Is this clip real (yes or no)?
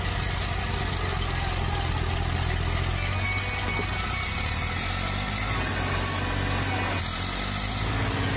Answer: yes